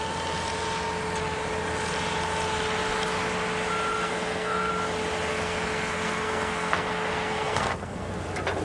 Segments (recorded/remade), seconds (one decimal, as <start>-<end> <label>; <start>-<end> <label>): 0.0-3.9 recorded; 3.9-4.7 remade; 4.7-5.3 recorded; 5.3-8.1 remade; 8.1-8.6 recorded